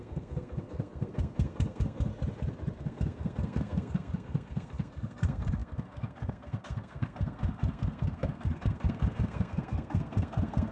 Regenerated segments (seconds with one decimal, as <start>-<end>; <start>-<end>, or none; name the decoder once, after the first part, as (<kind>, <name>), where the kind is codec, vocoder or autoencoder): 0.0-2.1 (codec, SNAC); 2.8-10.7